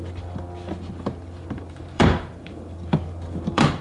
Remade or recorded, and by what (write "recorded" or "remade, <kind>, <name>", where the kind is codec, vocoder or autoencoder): remade, vocoder, BigVGAN v2